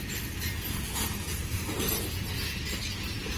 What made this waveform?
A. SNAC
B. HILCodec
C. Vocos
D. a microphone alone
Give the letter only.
D